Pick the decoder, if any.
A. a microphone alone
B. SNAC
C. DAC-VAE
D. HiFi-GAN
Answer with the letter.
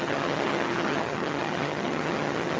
D